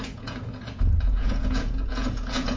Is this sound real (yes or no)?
no